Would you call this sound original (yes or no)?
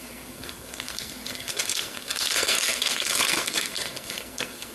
no